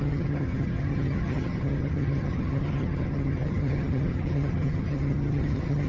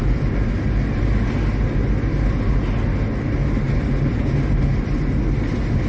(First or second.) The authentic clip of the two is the second